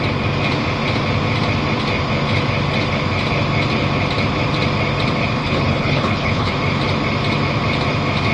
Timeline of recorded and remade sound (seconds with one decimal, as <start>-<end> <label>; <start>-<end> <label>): 0.0-5.4 recorded; 5.4-6.5 remade; 6.5-8.3 recorded